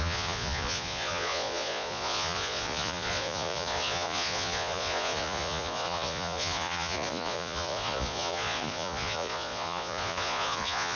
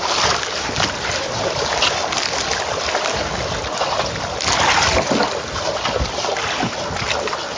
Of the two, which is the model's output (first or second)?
first